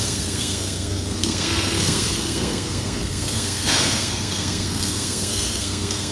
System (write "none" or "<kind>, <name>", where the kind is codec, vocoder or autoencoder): codec, SNAC